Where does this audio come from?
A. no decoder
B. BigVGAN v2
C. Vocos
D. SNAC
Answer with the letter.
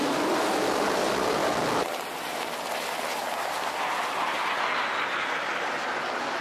A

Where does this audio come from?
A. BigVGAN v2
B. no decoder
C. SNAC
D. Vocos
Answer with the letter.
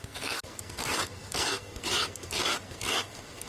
C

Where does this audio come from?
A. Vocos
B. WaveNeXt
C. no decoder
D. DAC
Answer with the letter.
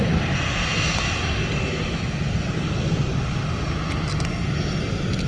C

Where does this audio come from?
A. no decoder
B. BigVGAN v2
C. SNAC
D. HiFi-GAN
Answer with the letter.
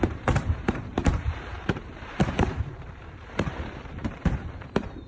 B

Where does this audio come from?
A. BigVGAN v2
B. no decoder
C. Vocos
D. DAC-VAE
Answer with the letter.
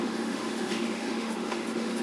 D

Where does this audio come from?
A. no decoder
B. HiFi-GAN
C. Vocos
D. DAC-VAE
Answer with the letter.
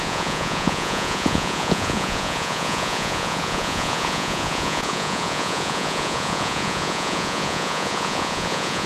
C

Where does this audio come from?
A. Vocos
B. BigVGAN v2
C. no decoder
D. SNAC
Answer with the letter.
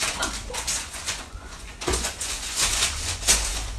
A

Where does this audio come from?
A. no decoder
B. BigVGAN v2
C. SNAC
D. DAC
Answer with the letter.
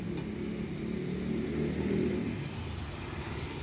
A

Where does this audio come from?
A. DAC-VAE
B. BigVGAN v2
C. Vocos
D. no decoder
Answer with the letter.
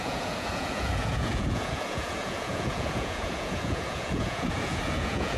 C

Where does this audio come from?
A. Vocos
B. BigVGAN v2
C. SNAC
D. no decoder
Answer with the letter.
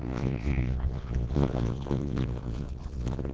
A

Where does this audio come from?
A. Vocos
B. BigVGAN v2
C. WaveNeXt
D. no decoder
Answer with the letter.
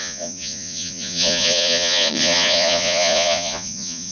A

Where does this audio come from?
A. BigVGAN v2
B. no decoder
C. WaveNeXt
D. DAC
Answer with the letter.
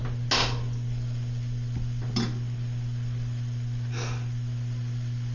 B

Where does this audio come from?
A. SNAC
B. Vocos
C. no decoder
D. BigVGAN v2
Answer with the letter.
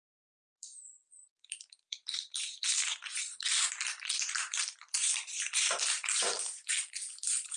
D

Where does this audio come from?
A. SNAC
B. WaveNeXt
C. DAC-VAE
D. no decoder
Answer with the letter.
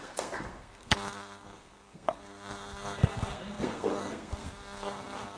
A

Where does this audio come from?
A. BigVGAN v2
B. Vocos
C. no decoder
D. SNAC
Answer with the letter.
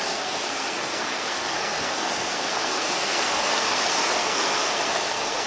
D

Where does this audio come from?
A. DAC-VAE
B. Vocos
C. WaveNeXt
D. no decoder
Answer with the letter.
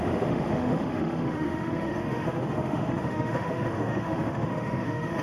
A